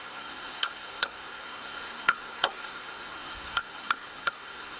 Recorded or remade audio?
remade